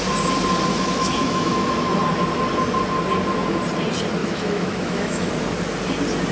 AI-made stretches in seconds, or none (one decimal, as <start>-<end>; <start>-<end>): 0.7-2.0; 4.2-5.3